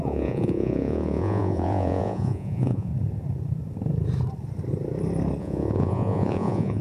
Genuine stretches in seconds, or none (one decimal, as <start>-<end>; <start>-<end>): 2.9-5.4